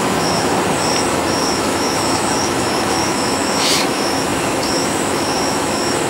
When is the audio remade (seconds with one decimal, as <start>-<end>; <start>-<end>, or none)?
0.0-0.5; 1.1-6.1